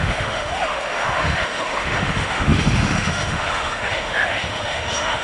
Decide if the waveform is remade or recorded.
remade